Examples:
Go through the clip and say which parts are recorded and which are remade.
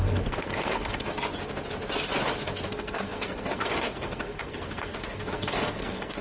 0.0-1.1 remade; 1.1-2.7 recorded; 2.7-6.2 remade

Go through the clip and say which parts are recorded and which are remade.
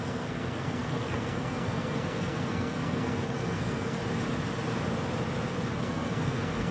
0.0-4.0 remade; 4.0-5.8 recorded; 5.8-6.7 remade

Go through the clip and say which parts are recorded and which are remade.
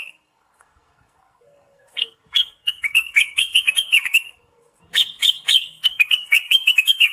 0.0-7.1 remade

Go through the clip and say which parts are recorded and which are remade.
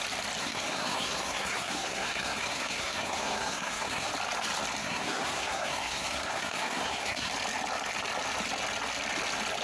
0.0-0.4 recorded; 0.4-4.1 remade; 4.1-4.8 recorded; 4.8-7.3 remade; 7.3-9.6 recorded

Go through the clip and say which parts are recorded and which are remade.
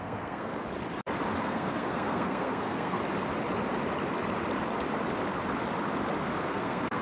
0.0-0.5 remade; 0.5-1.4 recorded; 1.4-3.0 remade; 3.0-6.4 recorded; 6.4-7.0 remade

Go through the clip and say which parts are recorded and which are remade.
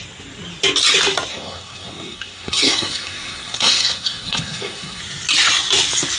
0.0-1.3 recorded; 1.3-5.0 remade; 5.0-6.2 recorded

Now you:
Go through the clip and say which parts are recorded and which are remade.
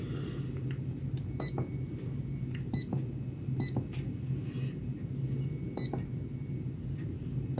0.0-7.6 recorded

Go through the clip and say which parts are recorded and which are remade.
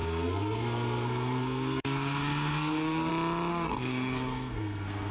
0.0-3.1 remade; 3.1-3.5 recorded; 3.5-5.1 remade